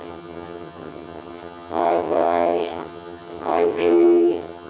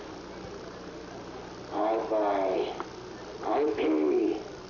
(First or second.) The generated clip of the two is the first